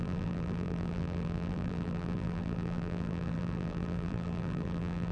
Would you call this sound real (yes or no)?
no